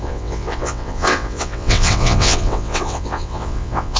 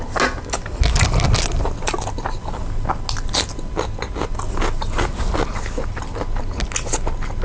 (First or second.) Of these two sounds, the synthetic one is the first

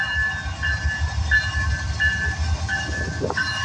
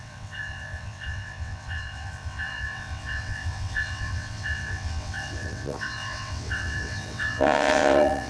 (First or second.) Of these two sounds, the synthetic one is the second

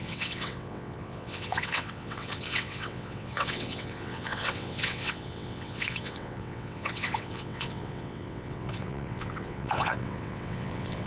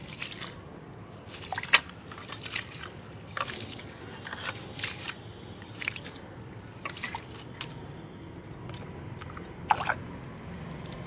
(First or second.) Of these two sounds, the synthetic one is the first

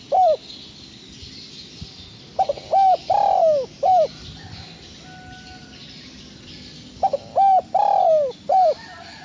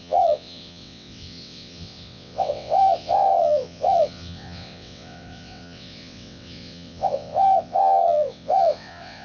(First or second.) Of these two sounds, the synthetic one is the second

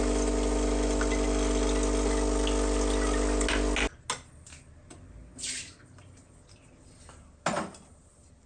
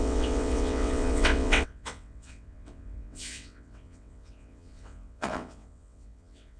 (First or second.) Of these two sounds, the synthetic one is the second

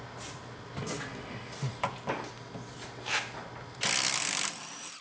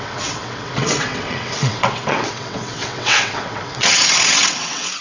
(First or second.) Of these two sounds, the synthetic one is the second